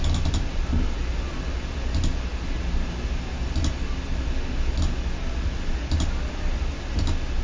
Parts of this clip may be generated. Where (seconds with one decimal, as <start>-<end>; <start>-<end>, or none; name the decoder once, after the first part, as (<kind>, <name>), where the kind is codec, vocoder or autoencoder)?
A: none